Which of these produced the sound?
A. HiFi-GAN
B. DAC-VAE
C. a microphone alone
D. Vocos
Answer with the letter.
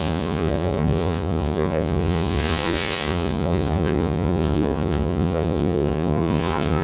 D